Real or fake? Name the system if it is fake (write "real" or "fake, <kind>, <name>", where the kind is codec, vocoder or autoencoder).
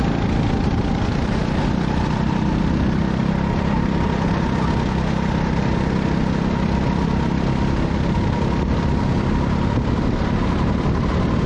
real